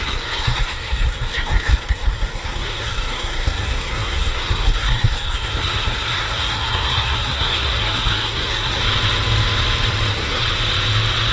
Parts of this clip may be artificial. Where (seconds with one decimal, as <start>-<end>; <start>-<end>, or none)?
0.0-8.8; 10.1-10.5